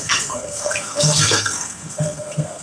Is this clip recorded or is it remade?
remade